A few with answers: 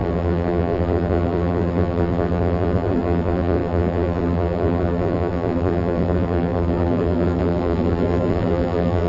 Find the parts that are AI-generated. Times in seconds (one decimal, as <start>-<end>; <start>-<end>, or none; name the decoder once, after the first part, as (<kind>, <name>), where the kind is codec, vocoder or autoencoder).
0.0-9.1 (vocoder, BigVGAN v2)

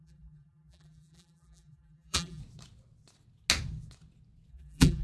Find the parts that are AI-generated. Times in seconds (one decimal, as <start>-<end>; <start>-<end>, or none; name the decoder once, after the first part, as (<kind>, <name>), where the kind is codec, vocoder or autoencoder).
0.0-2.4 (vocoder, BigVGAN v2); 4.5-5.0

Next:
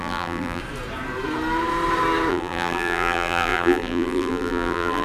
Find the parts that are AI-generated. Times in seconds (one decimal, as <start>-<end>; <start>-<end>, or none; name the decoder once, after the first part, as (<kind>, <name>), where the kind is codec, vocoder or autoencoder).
0.0-0.6 (vocoder, BigVGAN v2); 2.3-5.0